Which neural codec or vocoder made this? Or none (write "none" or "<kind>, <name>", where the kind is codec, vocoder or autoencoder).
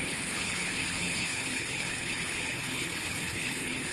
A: codec, HILCodec